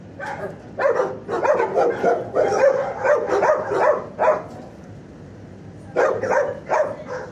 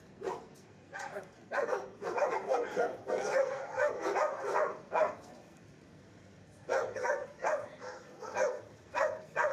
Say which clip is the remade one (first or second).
second